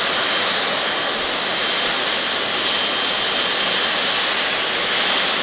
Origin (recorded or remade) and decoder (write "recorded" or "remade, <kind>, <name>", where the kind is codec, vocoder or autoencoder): recorded